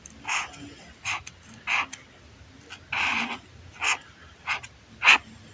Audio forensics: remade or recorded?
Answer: recorded